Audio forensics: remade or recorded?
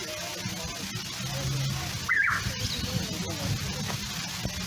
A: recorded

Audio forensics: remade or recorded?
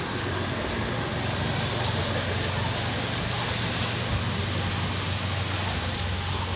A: recorded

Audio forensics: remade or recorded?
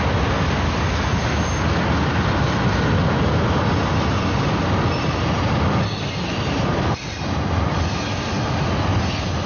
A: recorded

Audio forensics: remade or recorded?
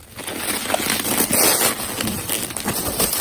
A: recorded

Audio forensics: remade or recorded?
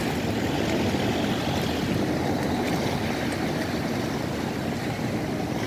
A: recorded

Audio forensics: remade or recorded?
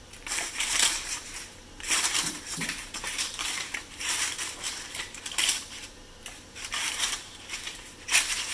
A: remade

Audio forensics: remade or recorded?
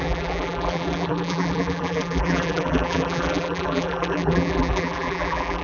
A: remade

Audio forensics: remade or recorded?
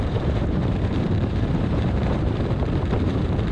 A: remade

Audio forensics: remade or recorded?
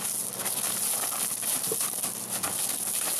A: recorded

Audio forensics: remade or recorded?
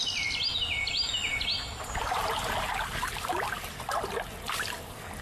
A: recorded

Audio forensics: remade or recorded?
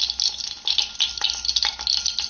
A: recorded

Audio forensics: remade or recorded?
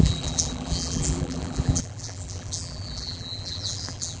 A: remade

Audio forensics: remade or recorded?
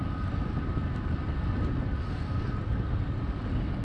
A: recorded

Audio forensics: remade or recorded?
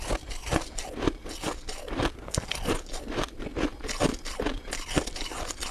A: recorded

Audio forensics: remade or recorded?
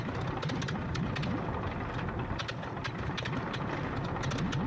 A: recorded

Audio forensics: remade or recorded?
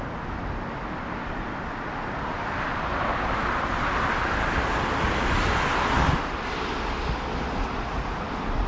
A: recorded